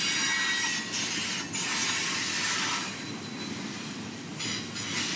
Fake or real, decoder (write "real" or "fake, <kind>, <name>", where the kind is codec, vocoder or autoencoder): real